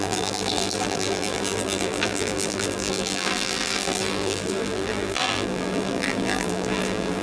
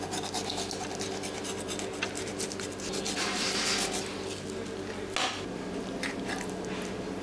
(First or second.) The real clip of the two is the second